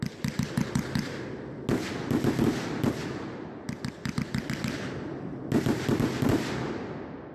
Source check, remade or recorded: recorded